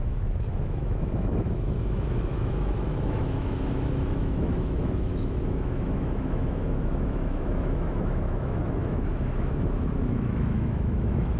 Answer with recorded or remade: remade